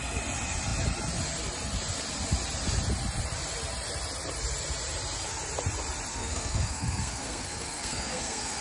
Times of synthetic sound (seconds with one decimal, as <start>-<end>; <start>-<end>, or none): 6.1-8.6

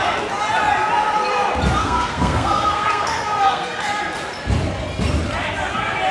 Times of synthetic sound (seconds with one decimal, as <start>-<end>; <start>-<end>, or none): 1.8-4.0

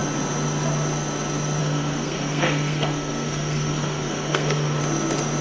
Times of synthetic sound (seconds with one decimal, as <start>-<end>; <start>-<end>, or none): 1.6-4.8

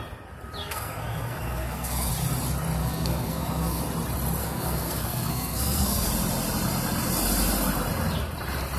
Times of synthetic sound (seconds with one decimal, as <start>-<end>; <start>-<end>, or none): 0.6-2.1; 2.8-3.8; 4.4-6.1

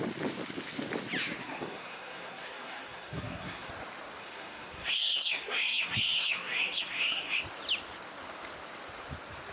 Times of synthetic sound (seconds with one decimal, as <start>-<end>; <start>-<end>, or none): 1.4-3.7; 4.2-7.4

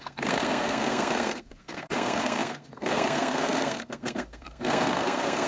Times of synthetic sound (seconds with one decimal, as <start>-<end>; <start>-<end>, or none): 0.0-5.5

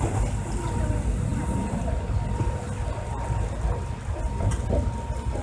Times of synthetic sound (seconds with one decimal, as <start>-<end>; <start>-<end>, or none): none

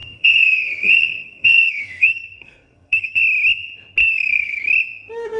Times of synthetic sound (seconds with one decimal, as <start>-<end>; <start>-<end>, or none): 0.0-3.2; 4.0-4.6